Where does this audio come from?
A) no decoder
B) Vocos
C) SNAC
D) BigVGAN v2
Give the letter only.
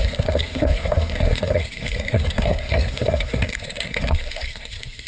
C